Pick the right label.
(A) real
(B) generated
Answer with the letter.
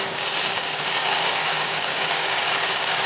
B